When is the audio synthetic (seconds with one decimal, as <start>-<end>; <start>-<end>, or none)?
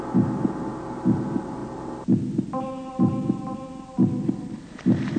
none